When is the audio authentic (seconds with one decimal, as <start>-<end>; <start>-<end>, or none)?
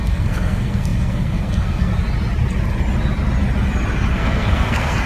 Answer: 1.9-4.1